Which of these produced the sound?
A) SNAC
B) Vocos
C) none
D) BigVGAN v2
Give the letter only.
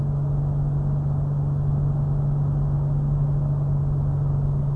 C